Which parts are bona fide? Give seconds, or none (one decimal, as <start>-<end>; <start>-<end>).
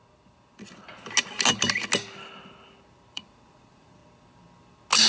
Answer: 0.0-3.1; 4.0-5.1